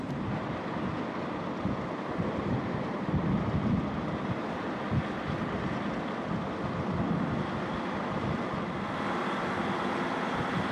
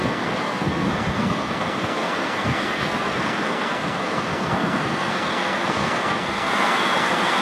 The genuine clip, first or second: first